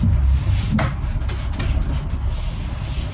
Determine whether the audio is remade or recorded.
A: recorded